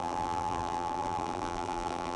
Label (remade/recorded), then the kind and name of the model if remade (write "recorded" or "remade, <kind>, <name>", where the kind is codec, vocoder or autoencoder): remade, vocoder, BigVGAN v2